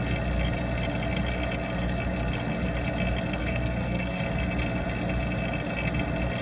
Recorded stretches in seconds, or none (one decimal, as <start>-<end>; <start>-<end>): 0.0-3.4; 4.2-6.4